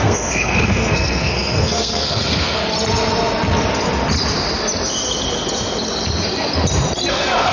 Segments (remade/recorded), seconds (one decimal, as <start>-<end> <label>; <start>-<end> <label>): 0.0-2.6 remade; 2.6-7.1 recorded; 7.1-7.5 remade